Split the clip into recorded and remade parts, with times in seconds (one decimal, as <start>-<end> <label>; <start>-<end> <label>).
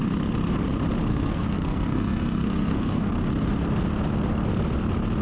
0.0-1.1 recorded; 1.1-3.1 remade; 3.1-5.2 recorded